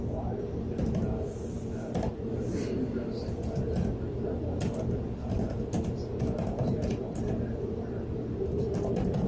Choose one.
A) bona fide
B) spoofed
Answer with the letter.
A